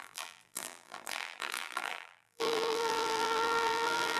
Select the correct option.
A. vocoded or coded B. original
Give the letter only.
A